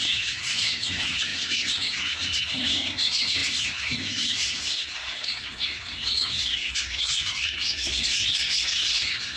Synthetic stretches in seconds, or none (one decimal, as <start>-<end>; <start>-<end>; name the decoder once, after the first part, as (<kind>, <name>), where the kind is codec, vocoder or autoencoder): 0.0-9.4 (codec, SNAC)